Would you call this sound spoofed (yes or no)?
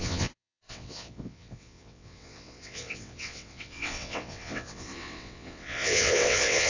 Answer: yes